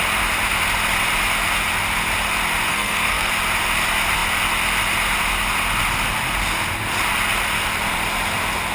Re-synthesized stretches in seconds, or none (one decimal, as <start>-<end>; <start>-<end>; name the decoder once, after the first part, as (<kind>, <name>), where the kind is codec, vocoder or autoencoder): 2.7-3.3 (codec, SNAC)